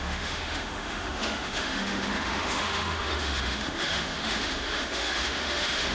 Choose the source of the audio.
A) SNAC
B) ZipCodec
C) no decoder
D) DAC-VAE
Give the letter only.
D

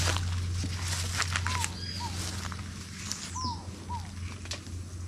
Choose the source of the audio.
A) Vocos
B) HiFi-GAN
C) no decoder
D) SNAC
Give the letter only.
C